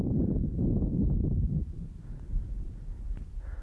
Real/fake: real